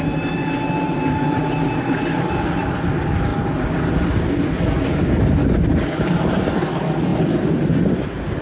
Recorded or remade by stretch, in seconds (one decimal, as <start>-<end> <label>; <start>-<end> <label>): 0.0-8.4 recorded